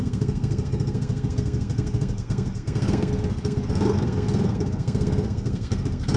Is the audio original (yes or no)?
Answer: no